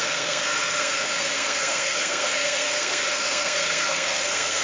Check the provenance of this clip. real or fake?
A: fake